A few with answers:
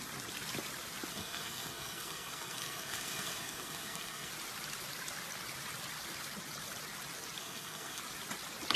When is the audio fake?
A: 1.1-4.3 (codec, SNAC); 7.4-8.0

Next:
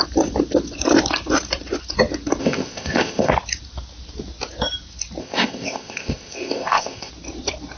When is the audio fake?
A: 2.4-3.3 (codec, ZipCodec); 5.2-7.1

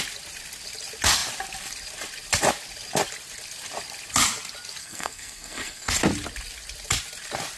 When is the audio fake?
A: 4.8-5.9 (codec, SNAC)